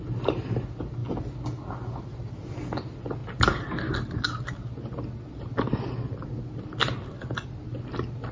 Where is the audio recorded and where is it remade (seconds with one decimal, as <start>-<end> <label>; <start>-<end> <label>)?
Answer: 0.0-8.3 recorded